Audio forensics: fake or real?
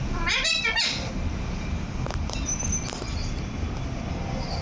real